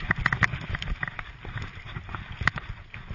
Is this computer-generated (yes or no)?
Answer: yes